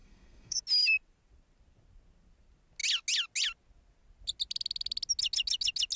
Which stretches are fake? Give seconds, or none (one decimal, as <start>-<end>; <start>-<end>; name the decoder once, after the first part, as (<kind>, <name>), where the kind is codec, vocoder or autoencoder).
0.0-0.6 (codec, SNAC)